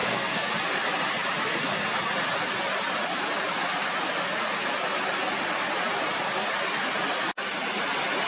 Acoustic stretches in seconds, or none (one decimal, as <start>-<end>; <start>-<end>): 0.5-8.3